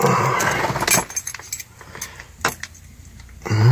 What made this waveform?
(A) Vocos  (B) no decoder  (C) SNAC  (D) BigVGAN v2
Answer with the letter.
B